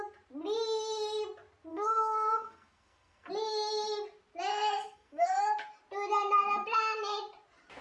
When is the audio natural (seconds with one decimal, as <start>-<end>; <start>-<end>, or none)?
0.0-1.7; 3.3-4.5; 5.4-7.8